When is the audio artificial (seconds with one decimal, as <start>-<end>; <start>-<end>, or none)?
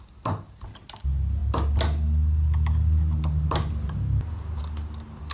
none